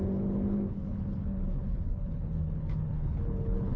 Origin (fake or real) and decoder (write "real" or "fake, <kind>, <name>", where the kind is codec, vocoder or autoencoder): fake, codec, HILCodec